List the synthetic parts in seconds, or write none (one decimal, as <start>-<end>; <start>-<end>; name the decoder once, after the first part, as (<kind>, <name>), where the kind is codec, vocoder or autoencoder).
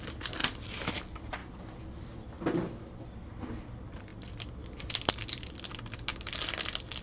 1.4-2.4 (vocoder, BigVGAN v2)